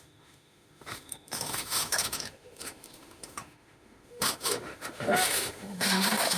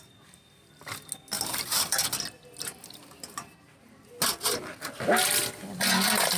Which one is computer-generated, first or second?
first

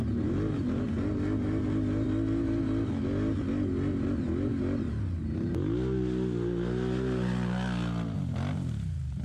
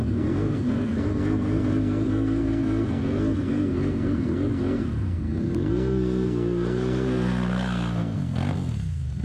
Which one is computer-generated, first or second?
second